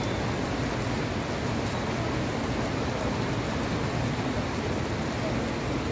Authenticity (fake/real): real